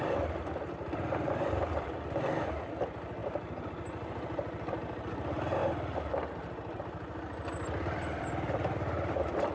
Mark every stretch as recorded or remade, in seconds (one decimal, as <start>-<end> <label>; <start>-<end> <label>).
0.0-5.6 remade; 5.6-6.8 recorded; 6.8-9.5 remade